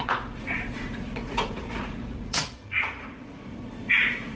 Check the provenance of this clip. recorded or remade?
remade